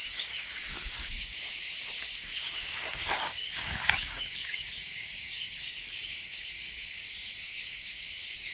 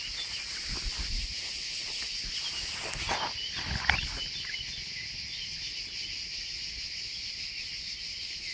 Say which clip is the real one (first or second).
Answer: second